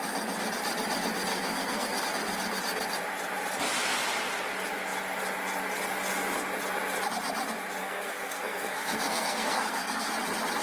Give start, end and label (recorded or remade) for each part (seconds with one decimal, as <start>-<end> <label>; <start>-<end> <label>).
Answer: 0.0-1.3 recorded; 1.3-2.0 remade; 2.0-7.8 recorded; 7.8-10.1 remade; 10.1-10.6 recorded